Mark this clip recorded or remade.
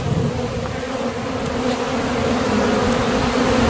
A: recorded